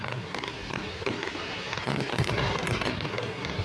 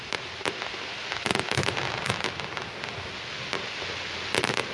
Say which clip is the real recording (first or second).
second